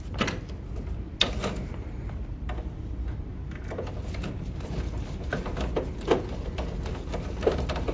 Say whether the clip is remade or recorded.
recorded